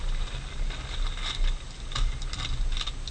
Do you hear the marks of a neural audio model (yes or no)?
no